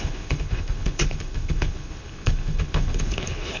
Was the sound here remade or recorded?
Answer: remade